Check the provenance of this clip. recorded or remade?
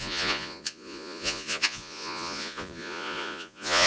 remade